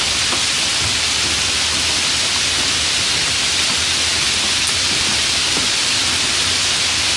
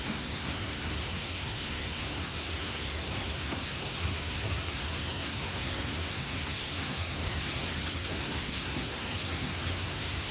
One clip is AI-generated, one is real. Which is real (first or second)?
first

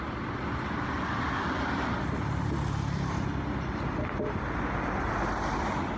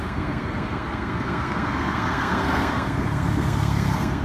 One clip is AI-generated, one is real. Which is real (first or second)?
first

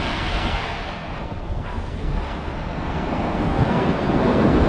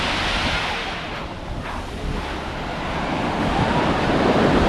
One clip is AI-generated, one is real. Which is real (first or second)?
second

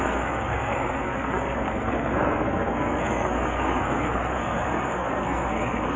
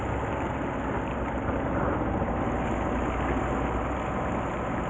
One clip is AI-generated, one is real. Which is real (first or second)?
second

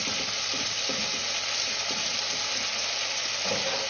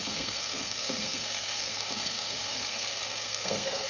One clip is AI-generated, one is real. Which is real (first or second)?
first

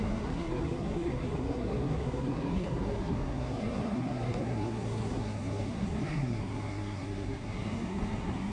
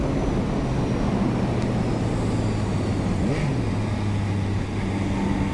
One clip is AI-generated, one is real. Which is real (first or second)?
second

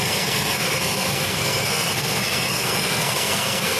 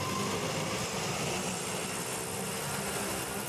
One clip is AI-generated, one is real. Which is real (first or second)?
second